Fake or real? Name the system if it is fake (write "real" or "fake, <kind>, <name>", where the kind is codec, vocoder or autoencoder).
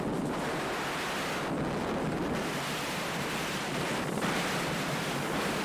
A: real